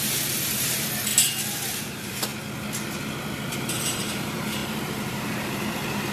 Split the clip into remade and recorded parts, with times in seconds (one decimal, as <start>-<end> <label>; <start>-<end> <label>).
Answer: 0.0-1.1 remade; 1.1-1.8 recorded; 1.8-2.3 remade; 2.3-3.6 recorded; 3.6-6.1 remade